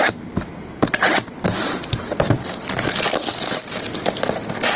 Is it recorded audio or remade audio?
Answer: recorded